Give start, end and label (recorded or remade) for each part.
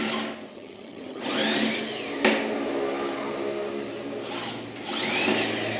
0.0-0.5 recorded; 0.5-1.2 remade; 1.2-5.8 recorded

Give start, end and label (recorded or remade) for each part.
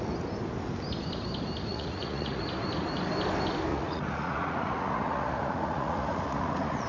0.0-1.7 recorded; 1.7-2.4 remade; 2.4-3.7 recorded; 3.7-6.9 remade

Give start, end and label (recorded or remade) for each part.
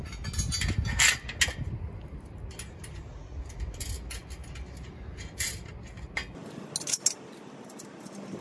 0.0-8.4 recorded